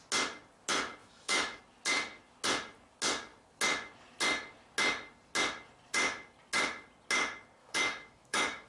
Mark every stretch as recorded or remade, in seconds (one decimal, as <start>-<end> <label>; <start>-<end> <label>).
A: 0.0-1.0 recorded; 1.0-1.6 remade; 1.6-7.6 recorded; 7.6-8.7 remade